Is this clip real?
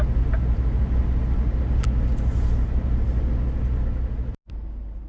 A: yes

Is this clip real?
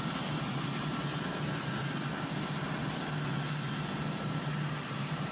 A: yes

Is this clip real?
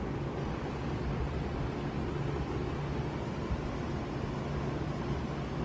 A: yes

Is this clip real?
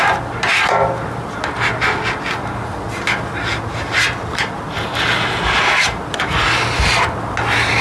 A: yes